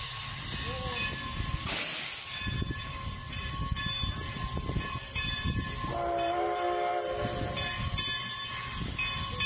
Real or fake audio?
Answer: real